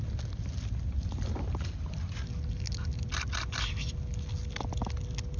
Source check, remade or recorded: recorded